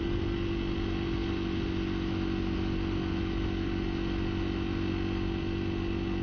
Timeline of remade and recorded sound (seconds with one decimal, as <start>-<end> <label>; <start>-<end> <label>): 0.0-6.2 recorded